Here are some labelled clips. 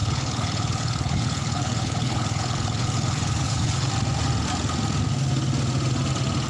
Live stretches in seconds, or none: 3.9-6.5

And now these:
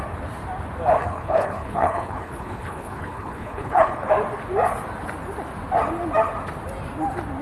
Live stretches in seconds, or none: 0.0-1.0; 4.1-7.4